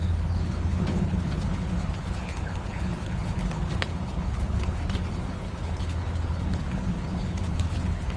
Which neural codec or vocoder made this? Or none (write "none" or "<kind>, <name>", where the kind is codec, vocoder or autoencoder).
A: codec, HILCodec